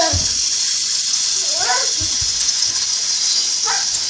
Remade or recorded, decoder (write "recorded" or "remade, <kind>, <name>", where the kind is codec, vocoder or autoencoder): remade, vocoder, Vocos